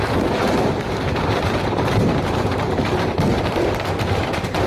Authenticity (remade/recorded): remade